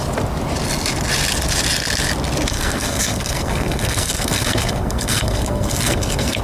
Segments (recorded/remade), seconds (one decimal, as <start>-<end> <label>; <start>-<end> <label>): 0.0-2.5 recorded; 2.5-6.4 remade